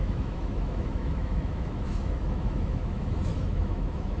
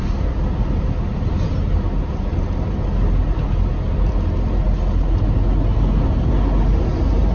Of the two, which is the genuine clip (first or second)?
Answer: second